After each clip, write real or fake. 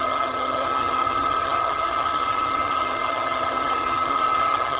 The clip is fake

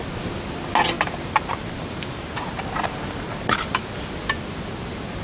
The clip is real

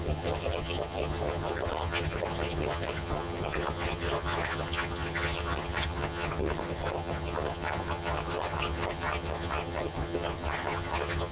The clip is fake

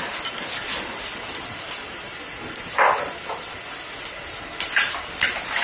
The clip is real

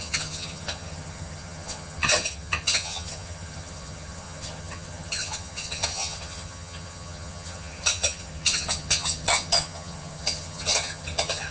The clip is fake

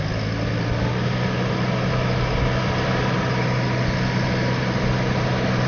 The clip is real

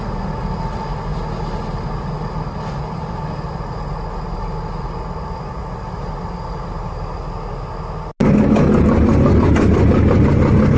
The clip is real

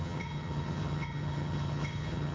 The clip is fake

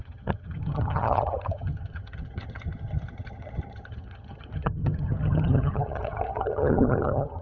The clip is fake